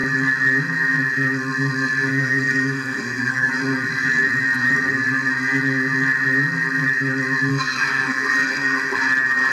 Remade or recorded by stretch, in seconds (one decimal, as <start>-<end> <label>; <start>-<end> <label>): 0.0-2.1 recorded; 2.1-3.5 remade; 3.5-7.5 recorded; 7.5-9.0 remade; 9.0-9.5 recorded